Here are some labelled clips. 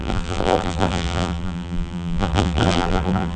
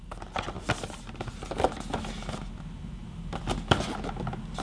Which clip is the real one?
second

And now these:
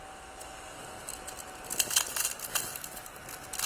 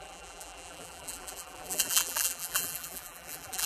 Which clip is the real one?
first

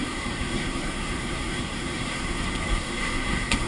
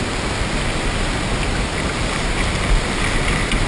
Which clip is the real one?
second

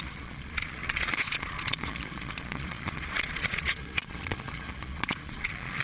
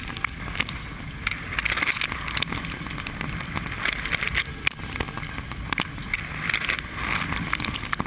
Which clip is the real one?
second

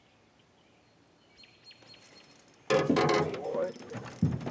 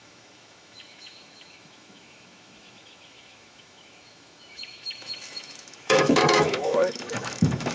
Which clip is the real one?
first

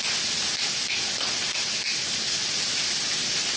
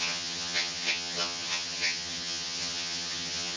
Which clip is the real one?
first